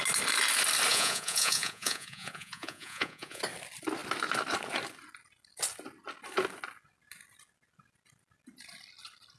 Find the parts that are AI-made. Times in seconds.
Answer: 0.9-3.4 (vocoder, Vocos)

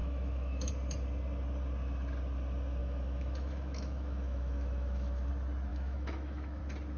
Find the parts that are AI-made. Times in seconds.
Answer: 0.0-0.7 (autoencoder, DAC-VAE); 2.8-5.3; 5.7-6.6